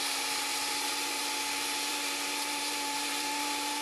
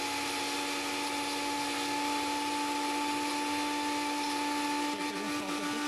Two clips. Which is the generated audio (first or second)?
first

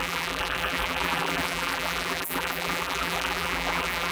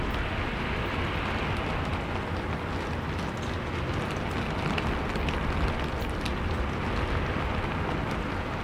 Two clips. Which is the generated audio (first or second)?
first